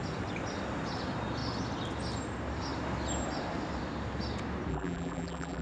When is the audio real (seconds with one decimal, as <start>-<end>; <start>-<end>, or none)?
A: 0.0-4.7